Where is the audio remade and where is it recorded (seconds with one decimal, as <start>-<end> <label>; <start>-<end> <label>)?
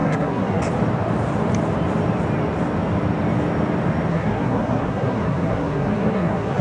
0.0-0.6 remade; 0.6-4.1 recorded; 4.1-6.6 remade